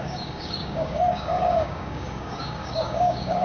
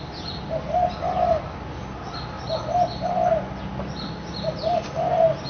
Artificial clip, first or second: first